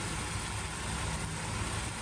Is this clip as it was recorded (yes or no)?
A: yes